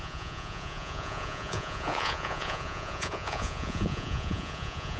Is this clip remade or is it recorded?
remade